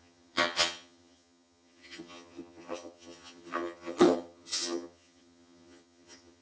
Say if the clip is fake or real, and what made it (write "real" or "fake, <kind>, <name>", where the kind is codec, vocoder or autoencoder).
fake, vocoder, HiFi-GAN